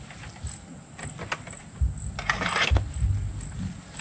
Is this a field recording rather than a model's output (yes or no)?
yes